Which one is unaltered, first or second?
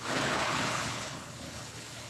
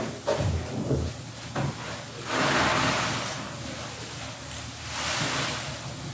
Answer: second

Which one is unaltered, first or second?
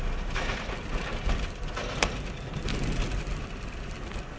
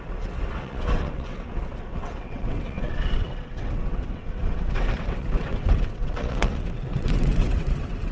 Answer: first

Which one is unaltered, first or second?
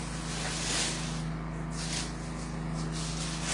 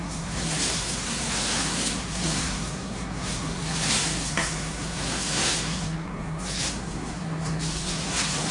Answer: first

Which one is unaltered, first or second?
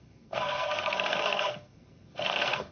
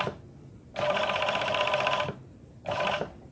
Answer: second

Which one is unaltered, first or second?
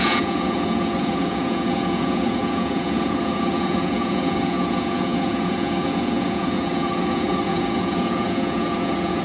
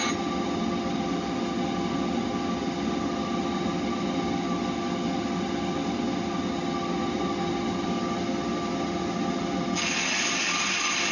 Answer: second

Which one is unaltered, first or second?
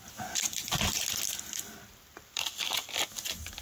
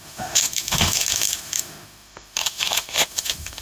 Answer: first